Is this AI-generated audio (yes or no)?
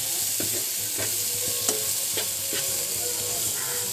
no